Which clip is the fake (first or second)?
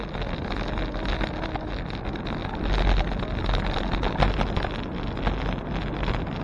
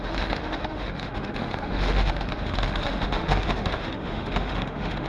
second